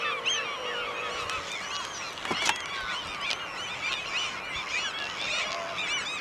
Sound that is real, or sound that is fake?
real